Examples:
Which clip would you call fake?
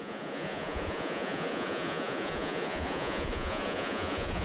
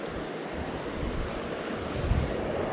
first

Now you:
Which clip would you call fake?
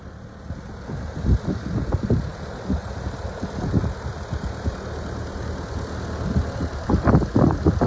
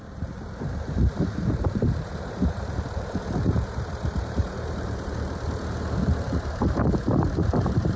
second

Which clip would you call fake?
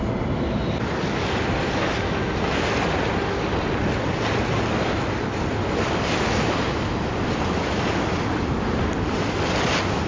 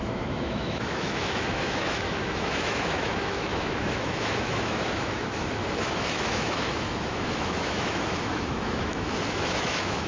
second